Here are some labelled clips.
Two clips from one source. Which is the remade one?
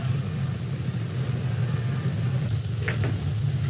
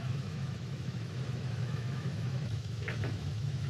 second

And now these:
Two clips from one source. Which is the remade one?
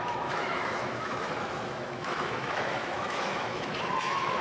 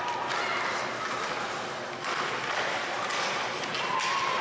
first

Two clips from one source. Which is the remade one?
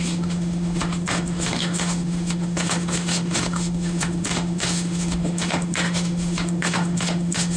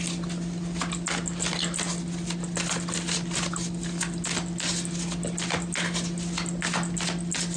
first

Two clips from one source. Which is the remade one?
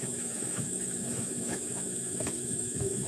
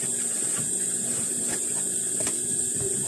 first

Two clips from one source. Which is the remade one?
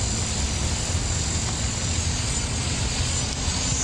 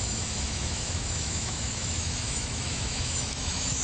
second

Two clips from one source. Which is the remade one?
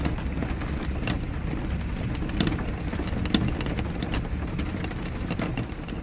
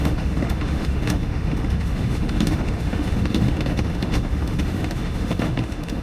second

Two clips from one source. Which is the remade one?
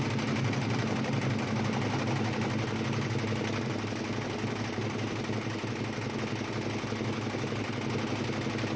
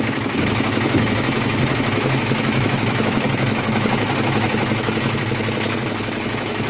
second